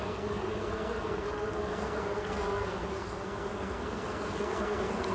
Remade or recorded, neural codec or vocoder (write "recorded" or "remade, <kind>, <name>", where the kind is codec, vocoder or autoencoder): remade, codec, SNAC